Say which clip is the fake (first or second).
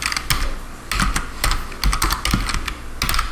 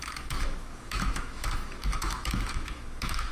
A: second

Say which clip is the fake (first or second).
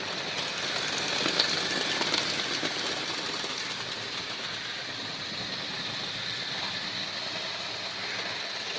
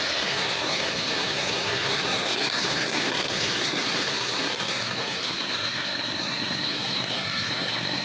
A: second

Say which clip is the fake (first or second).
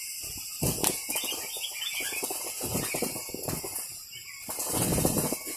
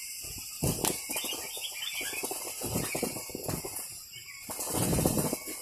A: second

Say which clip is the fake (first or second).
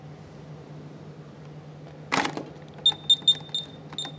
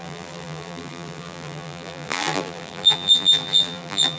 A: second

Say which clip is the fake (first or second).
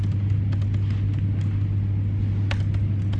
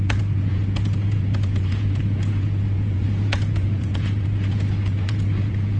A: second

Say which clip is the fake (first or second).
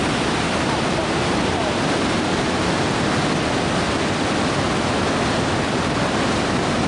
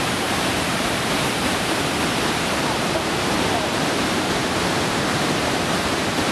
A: second